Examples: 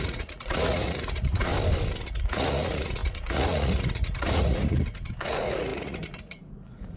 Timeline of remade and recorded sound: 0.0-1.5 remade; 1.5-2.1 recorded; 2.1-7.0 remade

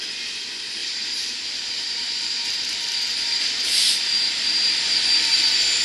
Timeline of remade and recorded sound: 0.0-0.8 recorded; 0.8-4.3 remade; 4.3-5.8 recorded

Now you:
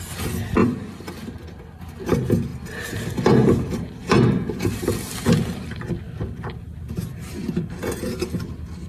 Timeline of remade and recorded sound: 0.0-0.6 recorded; 0.6-1.8 remade; 1.8-2.5 recorded; 2.5-5.9 remade; 5.9-8.9 recorded

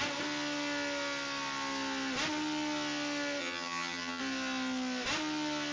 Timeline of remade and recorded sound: 0.0-3.4 recorded; 3.4-4.2 remade; 4.2-5.7 recorded

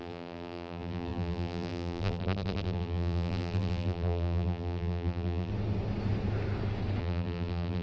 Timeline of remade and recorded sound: 0.0-5.5 remade; 5.5-7.0 recorded; 7.0-7.8 remade

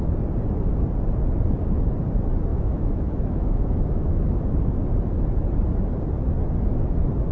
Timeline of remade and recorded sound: 0.0-2.5 recorded; 2.5-4.7 remade; 4.7-7.3 recorded

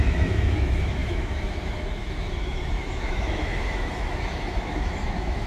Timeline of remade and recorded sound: 0.0-5.5 remade

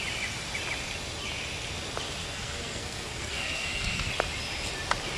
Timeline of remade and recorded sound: 0.0-2.2 recorded; 2.2-4.1 remade; 4.1-5.2 recorded